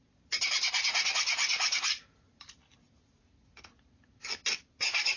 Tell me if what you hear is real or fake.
real